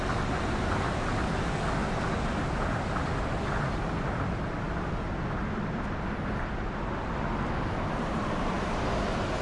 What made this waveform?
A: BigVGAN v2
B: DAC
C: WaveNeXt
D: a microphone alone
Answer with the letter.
A